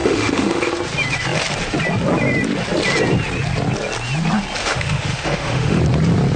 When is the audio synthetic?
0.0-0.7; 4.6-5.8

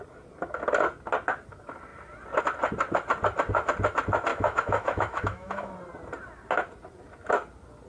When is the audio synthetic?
4.3-5.7

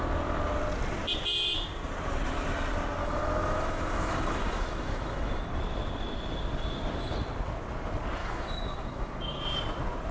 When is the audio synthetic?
3.0-5.5; 8.2-9.4

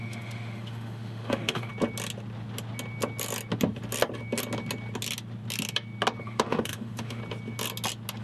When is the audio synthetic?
0.0-1.7; 6.2-7.2